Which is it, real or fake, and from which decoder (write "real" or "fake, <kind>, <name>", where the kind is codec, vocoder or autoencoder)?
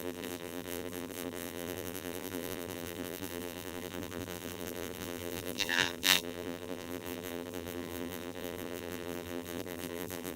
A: fake, vocoder, BigVGAN v2